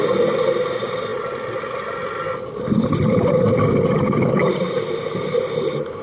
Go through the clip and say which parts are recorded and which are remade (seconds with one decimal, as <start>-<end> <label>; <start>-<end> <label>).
0.0-6.0 recorded